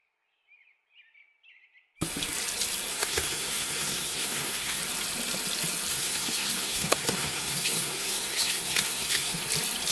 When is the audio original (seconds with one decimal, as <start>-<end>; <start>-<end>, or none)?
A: 0.0-2.9; 4.8-5.9; 9.4-9.9